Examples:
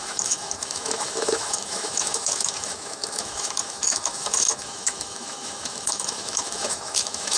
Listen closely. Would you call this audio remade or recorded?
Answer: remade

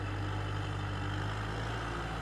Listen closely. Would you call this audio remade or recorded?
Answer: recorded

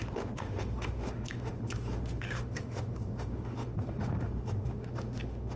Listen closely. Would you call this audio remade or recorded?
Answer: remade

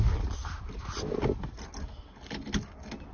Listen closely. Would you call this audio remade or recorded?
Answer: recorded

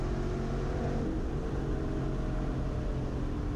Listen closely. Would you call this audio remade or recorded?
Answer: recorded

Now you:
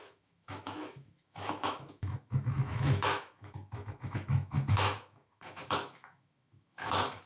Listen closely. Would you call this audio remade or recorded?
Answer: remade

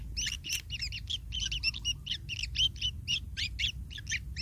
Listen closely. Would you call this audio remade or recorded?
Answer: recorded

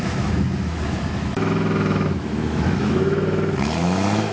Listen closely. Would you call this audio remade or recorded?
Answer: remade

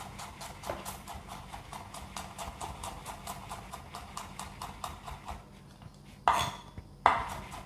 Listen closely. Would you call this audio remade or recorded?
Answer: recorded